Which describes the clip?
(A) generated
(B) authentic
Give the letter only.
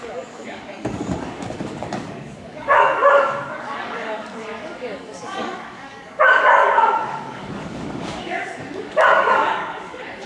A